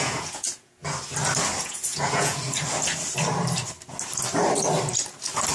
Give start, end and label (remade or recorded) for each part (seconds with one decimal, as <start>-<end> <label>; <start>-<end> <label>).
0.0-0.8 remade; 0.8-1.6 recorded; 1.6-2.4 remade; 2.4-5.5 recorded